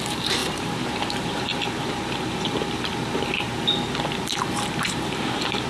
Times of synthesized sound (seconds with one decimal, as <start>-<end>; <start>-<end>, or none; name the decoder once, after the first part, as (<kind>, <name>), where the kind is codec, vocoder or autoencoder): 0.0-1.5 (vocoder, BigVGAN v2); 4.9-5.7